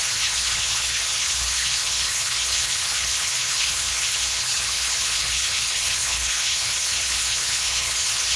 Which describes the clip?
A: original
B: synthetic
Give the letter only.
B